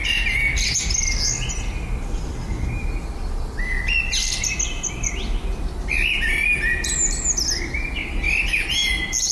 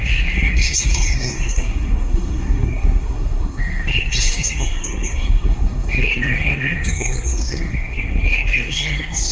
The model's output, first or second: second